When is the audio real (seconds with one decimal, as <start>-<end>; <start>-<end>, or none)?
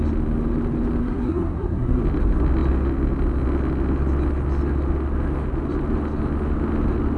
0.0-1.0; 2.0-7.2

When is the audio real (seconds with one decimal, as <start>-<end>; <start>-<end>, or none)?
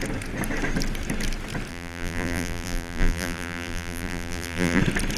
0.0-1.7; 4.8-5.2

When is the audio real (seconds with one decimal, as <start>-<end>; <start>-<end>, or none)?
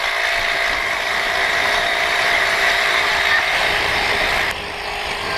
0.0-0.8; 4.0-5.4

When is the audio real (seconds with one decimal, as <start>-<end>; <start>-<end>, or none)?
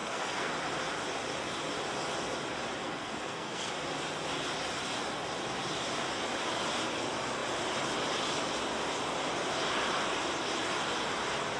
0.5-2.8; 3.7-11.6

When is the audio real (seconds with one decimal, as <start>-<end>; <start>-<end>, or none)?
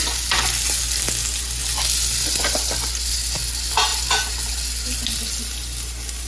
0.0-6.3